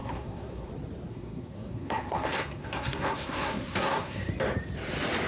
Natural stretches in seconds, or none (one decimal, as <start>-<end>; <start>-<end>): 0.7-1.1; 4.3-5.3